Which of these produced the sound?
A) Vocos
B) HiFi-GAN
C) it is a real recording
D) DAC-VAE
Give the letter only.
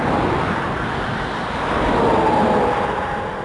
C